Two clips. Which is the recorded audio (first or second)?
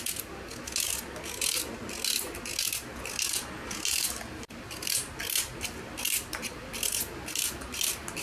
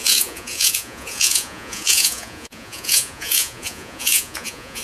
first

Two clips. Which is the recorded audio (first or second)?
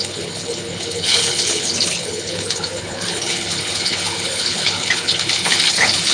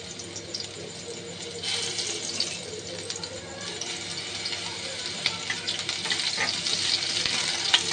second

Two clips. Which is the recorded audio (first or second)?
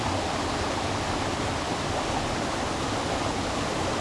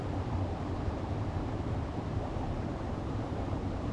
first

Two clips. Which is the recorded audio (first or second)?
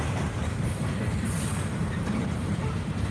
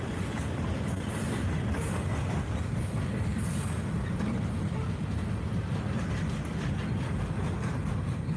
second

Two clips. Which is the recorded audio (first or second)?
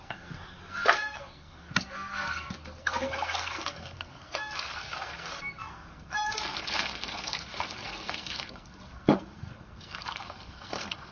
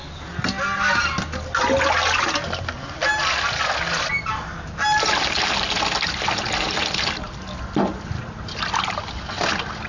second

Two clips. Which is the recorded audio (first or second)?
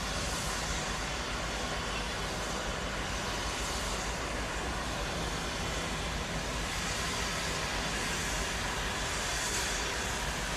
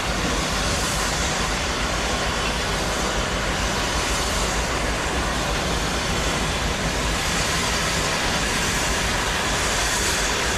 first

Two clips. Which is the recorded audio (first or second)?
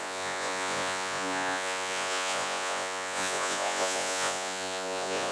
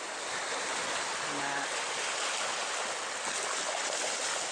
second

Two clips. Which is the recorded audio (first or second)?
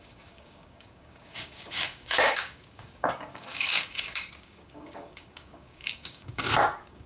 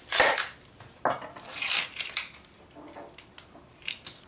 second